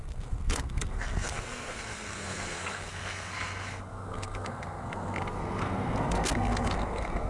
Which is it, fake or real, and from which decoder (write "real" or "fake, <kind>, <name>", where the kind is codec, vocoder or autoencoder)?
fake, codec, SNAC